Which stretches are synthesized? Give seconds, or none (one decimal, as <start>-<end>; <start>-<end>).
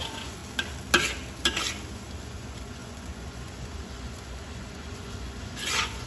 0.0-0.4; 1.9-6.1